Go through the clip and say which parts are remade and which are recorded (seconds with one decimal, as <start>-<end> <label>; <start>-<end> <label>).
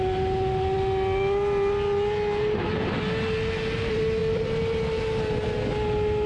0.0-6.3 recorded